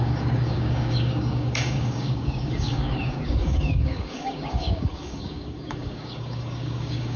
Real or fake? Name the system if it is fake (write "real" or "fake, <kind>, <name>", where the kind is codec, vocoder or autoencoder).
fake, codec, DAC